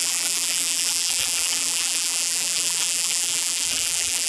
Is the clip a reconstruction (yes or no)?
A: yes